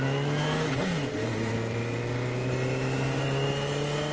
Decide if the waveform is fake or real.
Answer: real